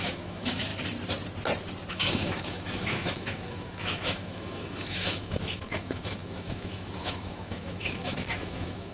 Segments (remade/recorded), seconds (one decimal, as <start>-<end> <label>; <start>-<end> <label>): 0.0-0.7 remade; 0.7-1.9 recorded; 1.9-8.9 remade